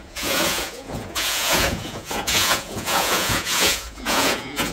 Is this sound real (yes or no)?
no